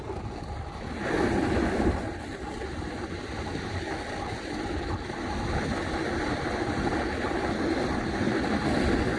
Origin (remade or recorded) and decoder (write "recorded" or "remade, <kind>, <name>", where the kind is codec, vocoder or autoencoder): recorded